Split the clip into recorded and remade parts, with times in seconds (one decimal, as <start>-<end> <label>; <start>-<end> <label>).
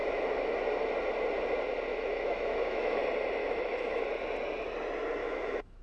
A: 0.0-0.5 remade; 0.5-1.9 recorded; 1.9-3.0 remade; 3.0-3.4 recorded; 3.4-4.0 remade; 4.0-5.2 recorded; 5.2-5.8 remade